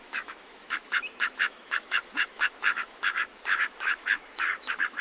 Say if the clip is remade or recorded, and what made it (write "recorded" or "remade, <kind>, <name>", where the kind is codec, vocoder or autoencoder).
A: remade, autoencoder, DAC-VAE